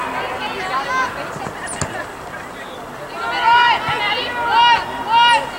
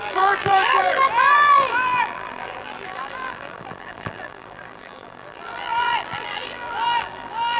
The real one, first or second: first